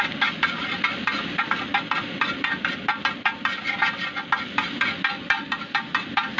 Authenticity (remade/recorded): recorded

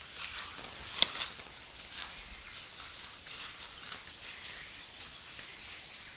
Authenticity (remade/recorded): recorded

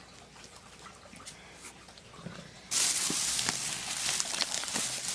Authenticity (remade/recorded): recorded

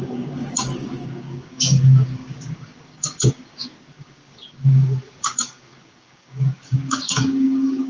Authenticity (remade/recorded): remade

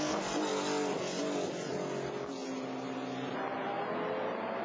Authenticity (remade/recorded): recorded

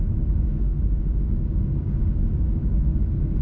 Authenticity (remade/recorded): remade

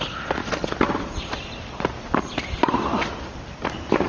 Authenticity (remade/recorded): recorded